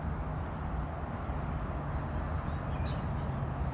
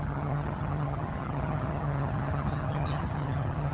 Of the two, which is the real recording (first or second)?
first